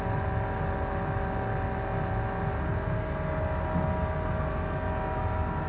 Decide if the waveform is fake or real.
real